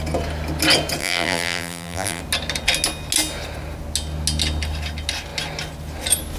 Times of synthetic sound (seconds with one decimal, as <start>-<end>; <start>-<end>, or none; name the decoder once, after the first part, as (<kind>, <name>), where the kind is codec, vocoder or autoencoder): 1.0-2.2 (vocoder, BigVGAN v2)

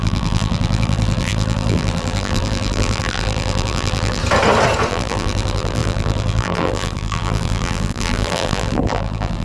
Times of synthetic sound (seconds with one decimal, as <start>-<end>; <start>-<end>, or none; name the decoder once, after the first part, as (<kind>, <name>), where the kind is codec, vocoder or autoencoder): 0.0-4.2 (vocoder, BigVGAN v2); 4.9-9.4

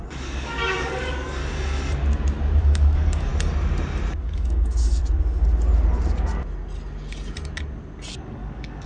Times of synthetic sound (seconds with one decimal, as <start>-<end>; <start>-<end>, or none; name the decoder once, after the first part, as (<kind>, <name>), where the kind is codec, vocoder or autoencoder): 0.0-1.4 (codec, DAC); 2.6-3.3; 4.1-5.0; 8.1-8.9